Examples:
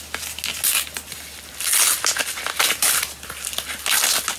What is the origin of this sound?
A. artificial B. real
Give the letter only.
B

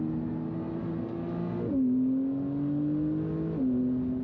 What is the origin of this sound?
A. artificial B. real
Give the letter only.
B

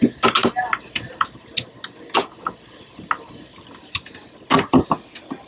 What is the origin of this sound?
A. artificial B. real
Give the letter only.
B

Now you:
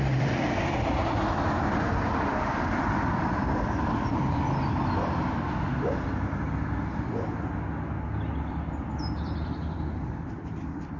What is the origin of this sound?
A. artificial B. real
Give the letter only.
A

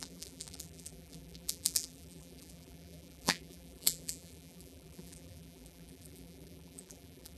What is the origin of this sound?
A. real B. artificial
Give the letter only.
B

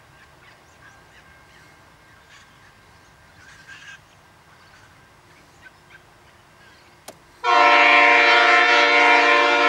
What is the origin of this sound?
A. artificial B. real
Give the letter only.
B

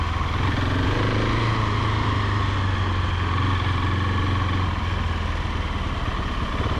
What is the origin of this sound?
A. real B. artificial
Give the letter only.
A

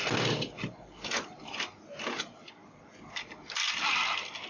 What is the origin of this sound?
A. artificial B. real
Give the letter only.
A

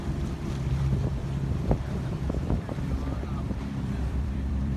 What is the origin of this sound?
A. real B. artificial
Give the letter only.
B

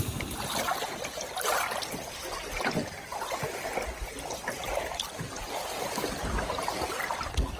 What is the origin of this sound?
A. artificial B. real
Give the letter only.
B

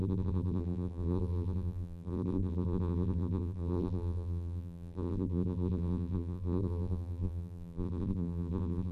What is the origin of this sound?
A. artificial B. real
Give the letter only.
A